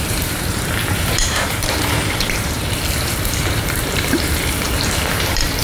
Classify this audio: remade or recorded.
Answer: remade